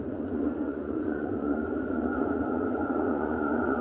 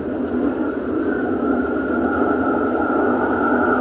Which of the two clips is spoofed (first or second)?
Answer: first